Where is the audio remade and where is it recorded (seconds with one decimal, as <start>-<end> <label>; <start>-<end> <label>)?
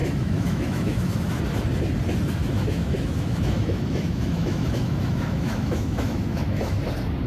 0.0-1.4 remade; 1.4-2.4 recorded; 2.4-6.8 remade; 6.8-7.3 recorded